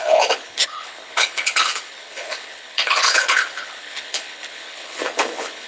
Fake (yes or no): yes